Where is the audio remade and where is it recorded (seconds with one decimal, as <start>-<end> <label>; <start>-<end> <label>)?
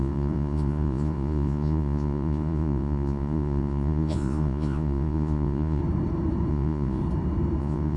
0.0-5.8 remade; 5.8-6.5 recorded; 6.5-7.0 remade; 7.0-7.6 recorded; 7.6-8.0 remade